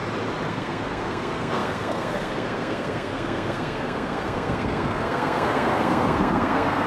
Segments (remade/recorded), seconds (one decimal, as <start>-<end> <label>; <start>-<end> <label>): 0.0-0.5 recorded; 0.5-6.9 remade